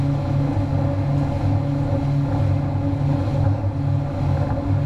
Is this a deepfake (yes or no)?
no